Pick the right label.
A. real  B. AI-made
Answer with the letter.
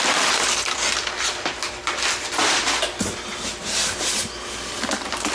A